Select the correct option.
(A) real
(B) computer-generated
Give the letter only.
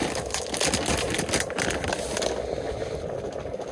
A